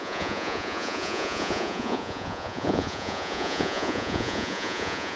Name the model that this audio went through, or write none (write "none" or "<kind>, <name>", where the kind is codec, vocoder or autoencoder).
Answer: vocoder, Vocos